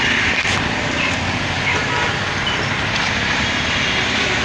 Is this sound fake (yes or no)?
no